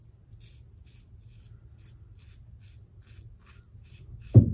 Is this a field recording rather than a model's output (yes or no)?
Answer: yes